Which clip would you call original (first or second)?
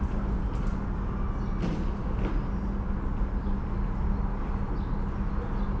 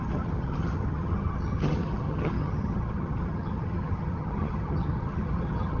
first